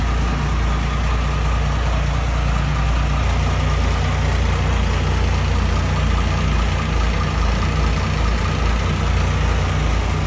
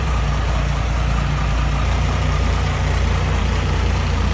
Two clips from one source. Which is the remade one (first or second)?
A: second